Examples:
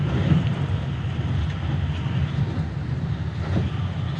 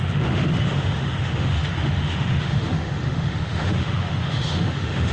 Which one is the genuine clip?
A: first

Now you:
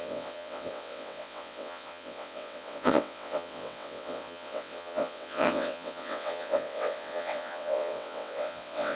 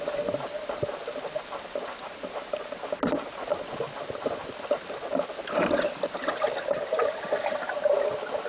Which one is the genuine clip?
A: second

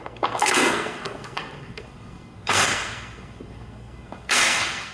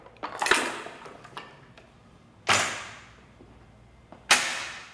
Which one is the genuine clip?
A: second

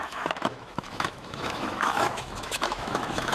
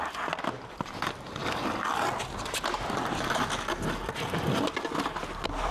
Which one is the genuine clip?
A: second